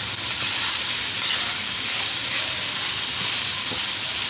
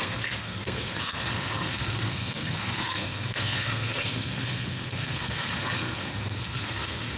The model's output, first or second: second